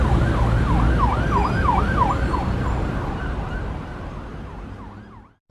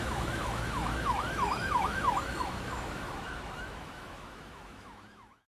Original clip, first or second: first